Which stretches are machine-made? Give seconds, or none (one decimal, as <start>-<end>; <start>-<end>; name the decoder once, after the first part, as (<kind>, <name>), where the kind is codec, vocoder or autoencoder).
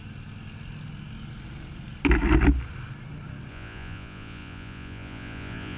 3.5-5.8 (vocoder, Vocos)